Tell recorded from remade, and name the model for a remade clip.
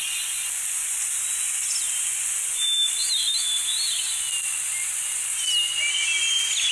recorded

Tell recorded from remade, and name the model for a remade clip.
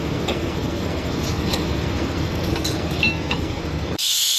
remade, codec, SNAC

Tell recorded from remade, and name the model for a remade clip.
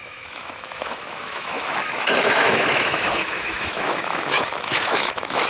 remade, autoencoder, DAC-VAE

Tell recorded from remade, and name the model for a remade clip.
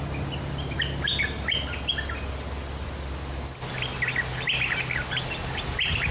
recorded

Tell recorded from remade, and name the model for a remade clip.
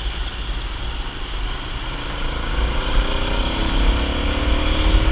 recorded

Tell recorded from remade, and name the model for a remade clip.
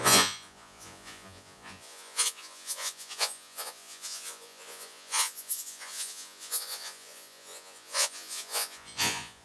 remade, vocoder, Vocos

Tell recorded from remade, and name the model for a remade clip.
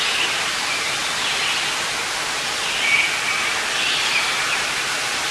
recorded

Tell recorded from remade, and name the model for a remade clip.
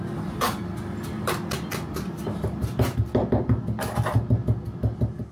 recorded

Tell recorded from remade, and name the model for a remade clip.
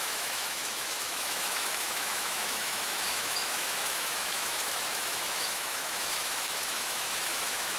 remade, autoencoder, DAC-VAE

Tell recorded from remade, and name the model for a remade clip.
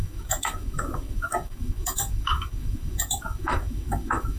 remade, autoencoder, DAC-VAE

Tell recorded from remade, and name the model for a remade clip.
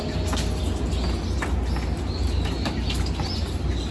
recorded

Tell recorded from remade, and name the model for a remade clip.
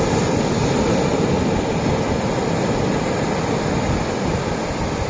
recorded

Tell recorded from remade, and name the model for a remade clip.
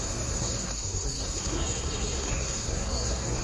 remade, codec, SNAC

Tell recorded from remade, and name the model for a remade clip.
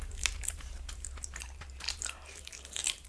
remade, vocoder, BigVGAN v2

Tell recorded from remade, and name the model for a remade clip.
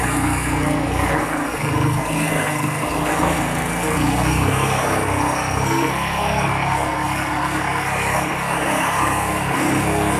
remade, codec, SNAC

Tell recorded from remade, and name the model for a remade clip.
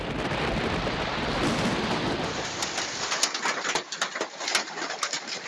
recorded